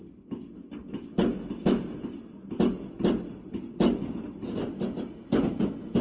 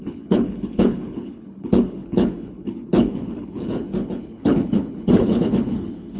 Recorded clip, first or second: first